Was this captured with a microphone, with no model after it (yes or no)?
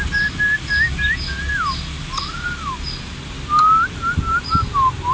yes